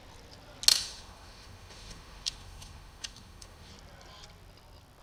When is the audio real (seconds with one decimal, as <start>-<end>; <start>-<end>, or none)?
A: 0.0-0.7; 3.7-5.0